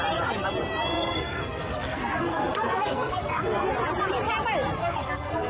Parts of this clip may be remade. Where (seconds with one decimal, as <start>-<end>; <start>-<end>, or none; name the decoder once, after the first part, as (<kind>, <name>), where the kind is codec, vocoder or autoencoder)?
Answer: 0.9-3.7 (codec, SNAC); 4.8-5.5